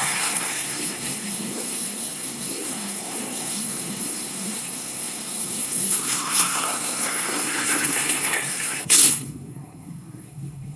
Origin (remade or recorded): remade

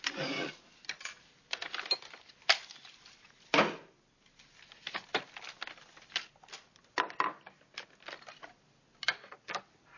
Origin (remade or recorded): recorded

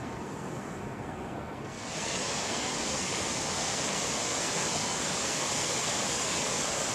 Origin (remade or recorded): remade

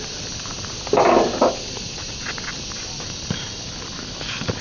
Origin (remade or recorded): recorded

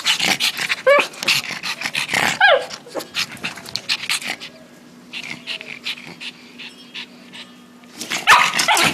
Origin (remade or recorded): recorded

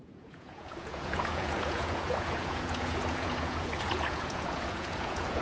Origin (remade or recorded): remade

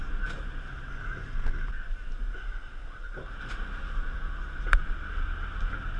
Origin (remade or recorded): recorded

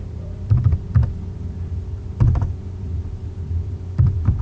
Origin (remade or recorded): remade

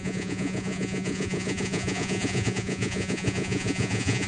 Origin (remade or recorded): remade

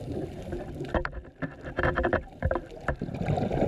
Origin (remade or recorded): remade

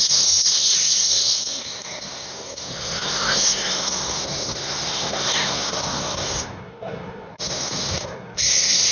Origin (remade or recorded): remade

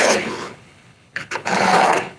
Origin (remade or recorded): remade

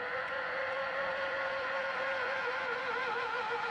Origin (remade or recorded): remade